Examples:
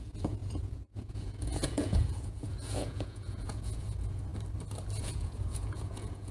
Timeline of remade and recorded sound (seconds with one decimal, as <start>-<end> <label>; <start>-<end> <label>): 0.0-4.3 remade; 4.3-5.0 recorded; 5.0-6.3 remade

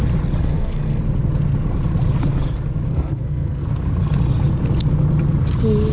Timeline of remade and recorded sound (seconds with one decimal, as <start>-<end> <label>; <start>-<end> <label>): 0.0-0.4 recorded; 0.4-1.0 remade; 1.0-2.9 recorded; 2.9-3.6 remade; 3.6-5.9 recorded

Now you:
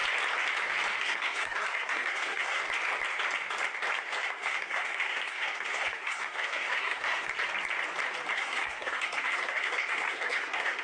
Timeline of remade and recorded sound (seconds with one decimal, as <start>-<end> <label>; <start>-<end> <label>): 0.0-1.0 recorded; 1.0-2.6 remade; 2.6-4.0 recorded; 4.0-7.3 remade; 7.3-8.3 recorded; 8.3-10.8 remade